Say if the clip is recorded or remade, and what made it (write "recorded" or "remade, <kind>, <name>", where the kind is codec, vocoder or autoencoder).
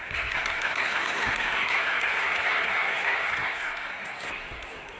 remade, codec, SNAC